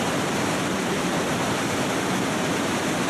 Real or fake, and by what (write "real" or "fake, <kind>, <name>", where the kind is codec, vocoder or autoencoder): real